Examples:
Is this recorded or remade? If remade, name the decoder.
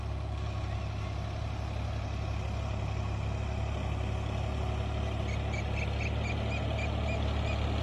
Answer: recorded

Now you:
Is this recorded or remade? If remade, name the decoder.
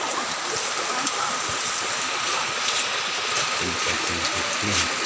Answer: recorded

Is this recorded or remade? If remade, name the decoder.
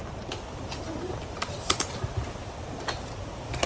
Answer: recorded